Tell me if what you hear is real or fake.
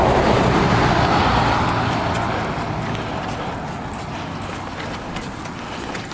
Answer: real